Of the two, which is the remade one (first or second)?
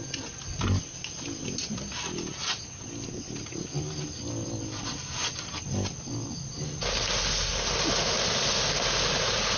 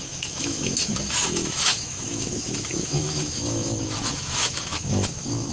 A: second